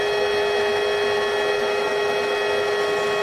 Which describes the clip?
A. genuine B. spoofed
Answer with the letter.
A